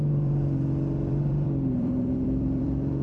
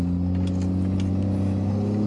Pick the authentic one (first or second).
second